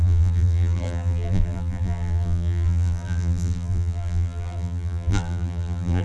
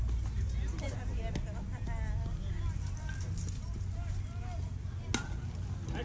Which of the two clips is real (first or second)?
second